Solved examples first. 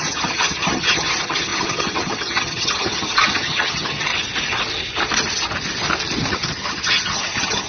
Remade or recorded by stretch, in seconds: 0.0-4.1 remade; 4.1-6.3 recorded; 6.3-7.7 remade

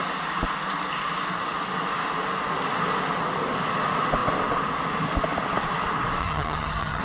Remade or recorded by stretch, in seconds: 0.0-6.2 recorded; 6.2-7.0 remade

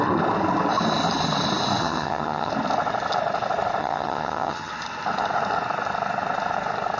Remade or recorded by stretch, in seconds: 0.0-1.8 recorded; 1.8-2.5 remade; 2.5-3.8 recorded; 3.8-4.7 remade; 4.7-7.0 recorded